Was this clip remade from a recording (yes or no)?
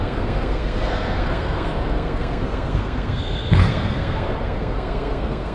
yes